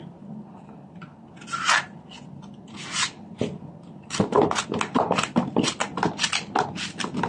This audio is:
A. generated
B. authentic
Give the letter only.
B